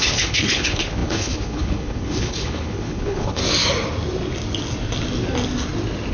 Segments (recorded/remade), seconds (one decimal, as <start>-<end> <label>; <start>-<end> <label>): 0.0-3.4 remade; 3.4-6.1 recorded